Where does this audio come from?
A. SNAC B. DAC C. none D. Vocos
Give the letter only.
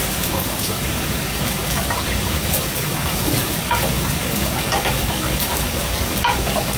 B